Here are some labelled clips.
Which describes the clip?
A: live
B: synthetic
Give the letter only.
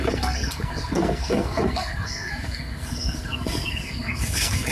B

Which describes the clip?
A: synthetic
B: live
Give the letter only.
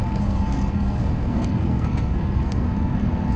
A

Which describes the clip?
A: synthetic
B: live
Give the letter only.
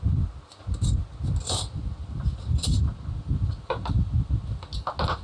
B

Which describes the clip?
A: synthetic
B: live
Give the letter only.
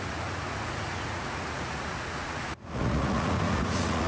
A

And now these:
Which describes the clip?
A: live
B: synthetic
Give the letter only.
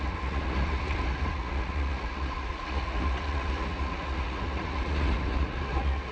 B